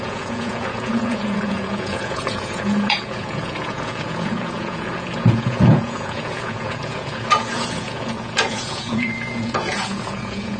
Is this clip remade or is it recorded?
remade